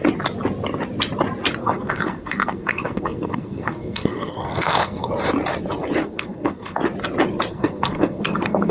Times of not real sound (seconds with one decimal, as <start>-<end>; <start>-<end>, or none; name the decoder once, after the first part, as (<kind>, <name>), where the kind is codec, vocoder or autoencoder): 1.6-5.1 (codec, SNAC); 6.0-6.8; 7.5-8.7